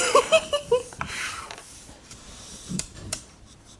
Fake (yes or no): yes